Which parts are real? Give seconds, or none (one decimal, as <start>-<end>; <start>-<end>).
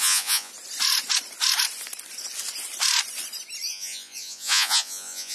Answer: 0.5-3.7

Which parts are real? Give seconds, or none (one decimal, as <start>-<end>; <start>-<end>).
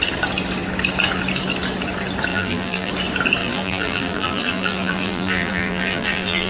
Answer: 0.0-2.3; 2.9-3.4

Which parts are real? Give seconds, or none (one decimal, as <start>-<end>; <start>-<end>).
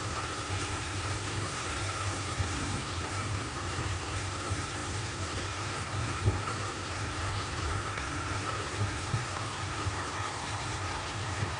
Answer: none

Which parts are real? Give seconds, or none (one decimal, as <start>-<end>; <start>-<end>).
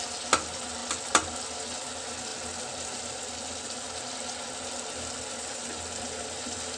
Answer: 0.0-6.8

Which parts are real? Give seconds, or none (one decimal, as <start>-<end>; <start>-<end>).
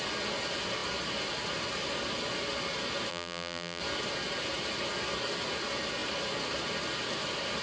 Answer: 0.0-3.1; 3.8-7.6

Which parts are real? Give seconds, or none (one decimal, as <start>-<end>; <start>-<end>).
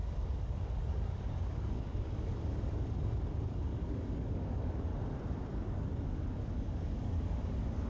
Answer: 4.9-5.5